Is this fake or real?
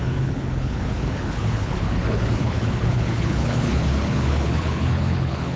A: fake